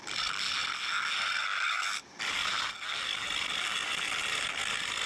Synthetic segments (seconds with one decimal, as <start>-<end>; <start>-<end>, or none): none